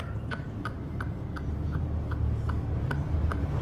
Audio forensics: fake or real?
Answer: fake